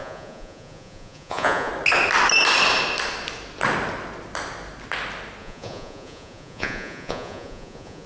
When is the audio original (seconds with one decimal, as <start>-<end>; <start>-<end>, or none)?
1.7-5.4